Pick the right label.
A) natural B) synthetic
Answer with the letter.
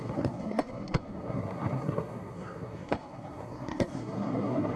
B